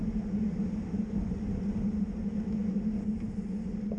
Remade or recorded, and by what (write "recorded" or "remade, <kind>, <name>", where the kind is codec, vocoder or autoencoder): recorded